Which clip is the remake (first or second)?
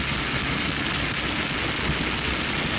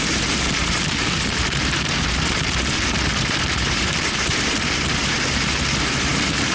second